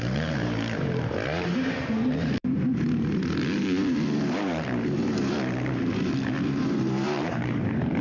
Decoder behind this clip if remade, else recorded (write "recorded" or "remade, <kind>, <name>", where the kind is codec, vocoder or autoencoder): remade, vocoder, BigVGAN v2